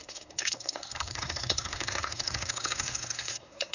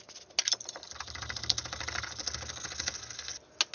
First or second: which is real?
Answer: second